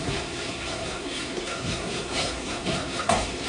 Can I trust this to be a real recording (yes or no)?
no